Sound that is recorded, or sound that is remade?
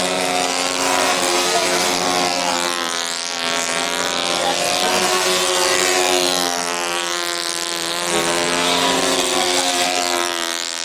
recorded